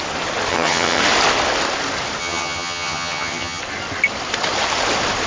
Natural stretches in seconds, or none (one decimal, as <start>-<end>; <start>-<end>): 0.0-0.5; 1.0-2.2; 3.6-5.3